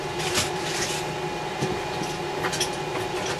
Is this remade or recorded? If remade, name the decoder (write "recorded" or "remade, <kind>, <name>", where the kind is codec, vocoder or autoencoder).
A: recorded